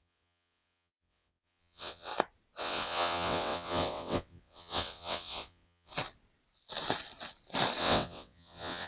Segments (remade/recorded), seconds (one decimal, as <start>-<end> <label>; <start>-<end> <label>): 0.0-2.1 remade; 2.1-2.6 recorded; 2.6-5.9 remade; 5.9-7.8 recorded; 7.8-8.9 remade